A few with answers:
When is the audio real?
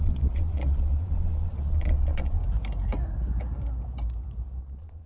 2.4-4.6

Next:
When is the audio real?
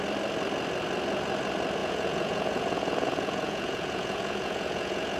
0.0-1.8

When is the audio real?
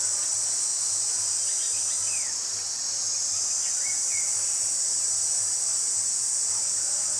0.0-7.2